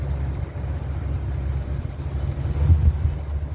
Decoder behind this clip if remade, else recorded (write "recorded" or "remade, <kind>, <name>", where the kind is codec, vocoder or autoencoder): recorded